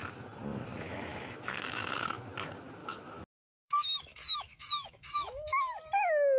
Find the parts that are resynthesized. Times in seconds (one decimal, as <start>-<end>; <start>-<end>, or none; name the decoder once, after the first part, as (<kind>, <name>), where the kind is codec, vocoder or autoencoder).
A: 0.5-2.2 (autoencoder, DAC-VAE); 2.8-5.9